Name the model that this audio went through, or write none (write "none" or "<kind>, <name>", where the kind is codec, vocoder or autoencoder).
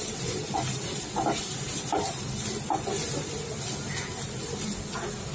none